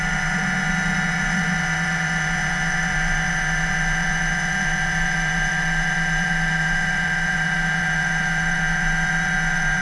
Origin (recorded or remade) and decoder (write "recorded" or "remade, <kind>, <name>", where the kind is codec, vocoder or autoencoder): remade, vocoder, Vocos